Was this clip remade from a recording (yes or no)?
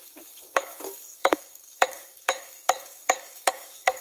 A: yes